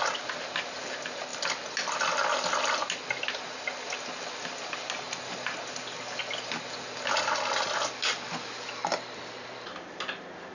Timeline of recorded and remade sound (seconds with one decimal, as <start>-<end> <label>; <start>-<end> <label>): 0.0-10.5 recorded